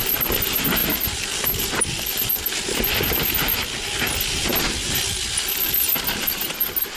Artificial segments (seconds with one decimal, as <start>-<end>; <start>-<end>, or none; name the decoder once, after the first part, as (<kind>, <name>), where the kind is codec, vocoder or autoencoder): none

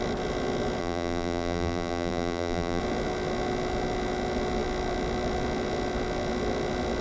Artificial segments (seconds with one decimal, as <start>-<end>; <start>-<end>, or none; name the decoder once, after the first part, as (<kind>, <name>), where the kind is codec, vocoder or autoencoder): 0.8-2.8 (vocoder, BigVGAN v2)